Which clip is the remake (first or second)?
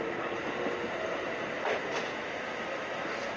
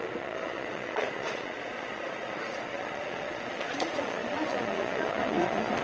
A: second